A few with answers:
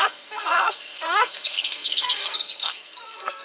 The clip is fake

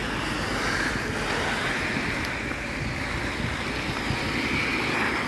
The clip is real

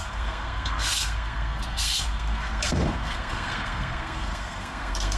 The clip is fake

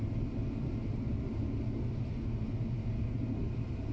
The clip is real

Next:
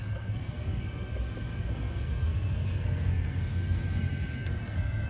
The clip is fake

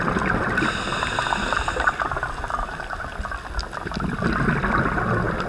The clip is real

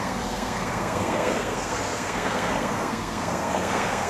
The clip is fake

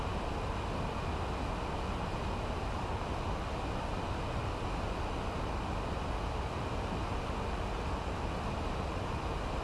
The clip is real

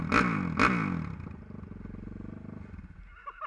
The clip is real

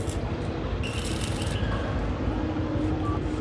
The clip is real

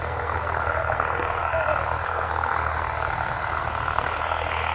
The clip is fake